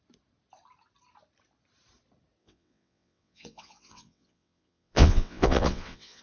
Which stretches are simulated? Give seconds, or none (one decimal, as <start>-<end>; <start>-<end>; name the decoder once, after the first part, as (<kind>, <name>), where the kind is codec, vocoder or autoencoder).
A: 2.4-6.2 (vocoder, WaveNeXt)